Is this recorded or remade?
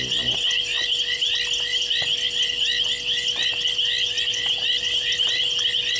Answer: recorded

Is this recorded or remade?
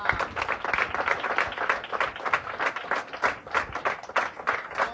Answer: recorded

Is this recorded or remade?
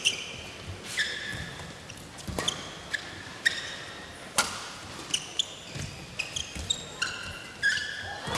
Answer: recorded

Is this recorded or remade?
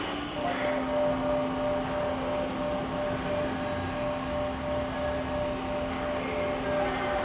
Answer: recorded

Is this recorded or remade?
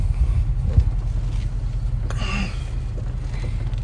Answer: recorded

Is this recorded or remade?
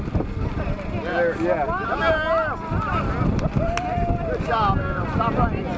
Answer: recorded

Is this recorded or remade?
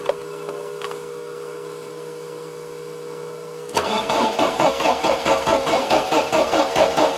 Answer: remade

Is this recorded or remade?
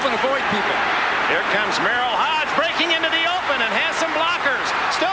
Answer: recorded